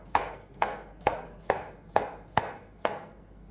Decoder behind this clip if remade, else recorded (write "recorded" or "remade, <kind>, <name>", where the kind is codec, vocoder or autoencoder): remade, codec, SNAC